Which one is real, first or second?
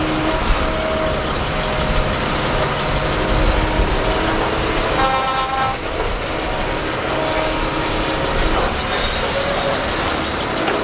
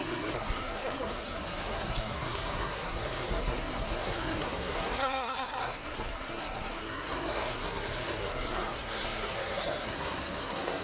first